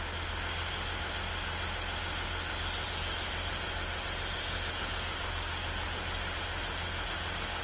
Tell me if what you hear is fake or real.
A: real